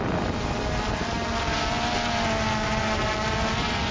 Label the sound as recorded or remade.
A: recorded